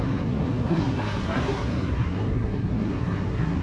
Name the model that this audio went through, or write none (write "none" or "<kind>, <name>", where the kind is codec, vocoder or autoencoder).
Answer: codec, SNAC